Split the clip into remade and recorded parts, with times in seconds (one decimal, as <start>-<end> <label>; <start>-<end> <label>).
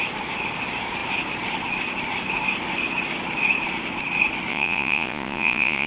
0.0-4.5 recorded; 4.5-5.9 remade